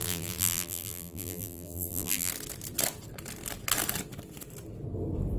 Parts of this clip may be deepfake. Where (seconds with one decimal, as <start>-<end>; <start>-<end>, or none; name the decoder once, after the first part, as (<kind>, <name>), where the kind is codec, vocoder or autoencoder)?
0.0-2.3 (vocoder, BigVGAN v2)